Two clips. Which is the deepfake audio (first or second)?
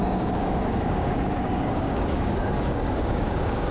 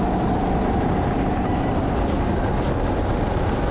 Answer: first